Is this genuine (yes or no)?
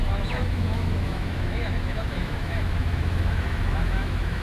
no